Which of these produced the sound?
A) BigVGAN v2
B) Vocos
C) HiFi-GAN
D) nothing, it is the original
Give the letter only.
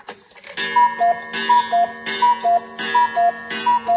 D